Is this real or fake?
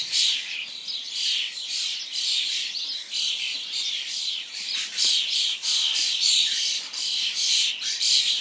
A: fake